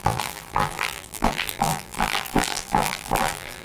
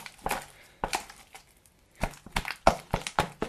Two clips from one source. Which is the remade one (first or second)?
first